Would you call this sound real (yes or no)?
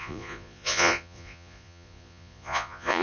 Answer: no